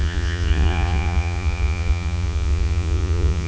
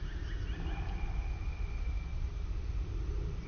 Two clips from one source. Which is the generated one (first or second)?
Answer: first